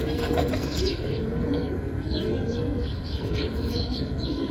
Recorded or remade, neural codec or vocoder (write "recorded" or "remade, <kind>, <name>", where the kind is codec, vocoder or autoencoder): remade, codec, SNAC